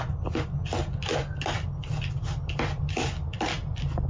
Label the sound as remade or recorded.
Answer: recorded